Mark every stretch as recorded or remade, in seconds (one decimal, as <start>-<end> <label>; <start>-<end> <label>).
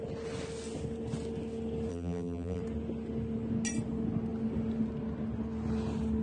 0.0-1.9 recorded; 1.9-2.6 remade; 2.6-6.2 recorded